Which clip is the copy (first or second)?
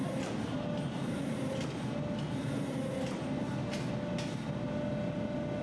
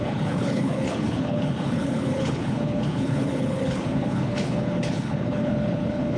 second